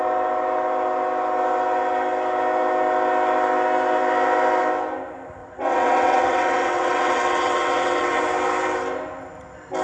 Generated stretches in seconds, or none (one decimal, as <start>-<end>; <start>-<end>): 5.4-8.2